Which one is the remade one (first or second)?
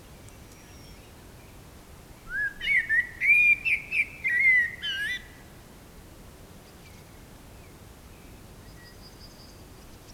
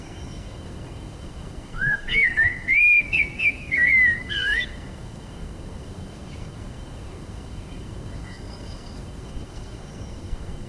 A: second